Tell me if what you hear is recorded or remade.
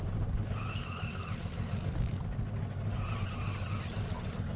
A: recorded